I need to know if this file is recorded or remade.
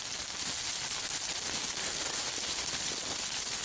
recorded